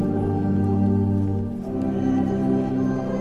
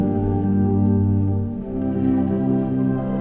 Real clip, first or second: first